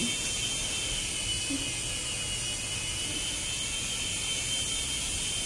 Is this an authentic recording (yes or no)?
yes